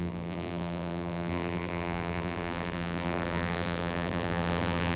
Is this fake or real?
fake